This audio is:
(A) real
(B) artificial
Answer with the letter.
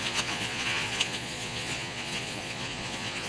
B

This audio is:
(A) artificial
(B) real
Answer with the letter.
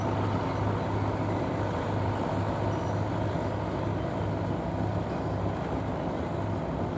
B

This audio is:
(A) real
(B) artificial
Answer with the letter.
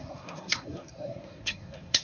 B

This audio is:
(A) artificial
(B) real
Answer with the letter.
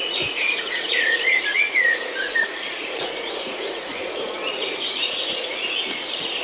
A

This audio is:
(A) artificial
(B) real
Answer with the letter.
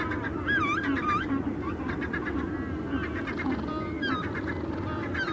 B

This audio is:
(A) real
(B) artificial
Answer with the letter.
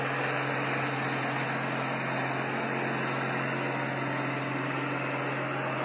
A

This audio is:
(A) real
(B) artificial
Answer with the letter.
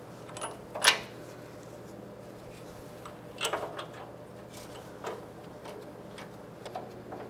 A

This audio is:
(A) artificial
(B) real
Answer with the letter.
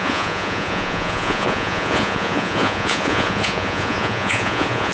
A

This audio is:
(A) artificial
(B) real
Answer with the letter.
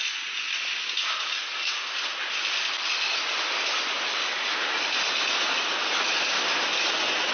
B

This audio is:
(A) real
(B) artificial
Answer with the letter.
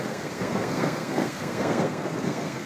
B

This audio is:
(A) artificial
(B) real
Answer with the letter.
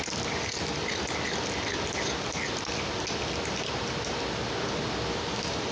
B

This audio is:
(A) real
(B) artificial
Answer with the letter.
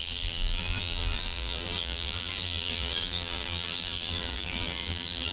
B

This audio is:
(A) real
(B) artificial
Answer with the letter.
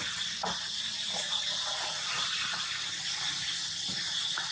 A